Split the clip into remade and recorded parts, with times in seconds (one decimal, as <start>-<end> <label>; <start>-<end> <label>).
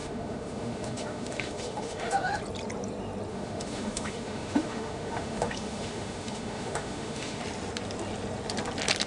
0.0-2.4 remade; 2.4-3.3 recorded; 3.3-7.4 remade; 7.4-9.1 recorded